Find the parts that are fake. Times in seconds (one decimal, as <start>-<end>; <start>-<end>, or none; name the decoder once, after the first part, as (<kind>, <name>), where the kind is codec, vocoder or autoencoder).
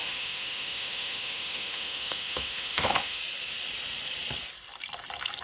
0.0-3.2 (autoencoder, DAC-VAE)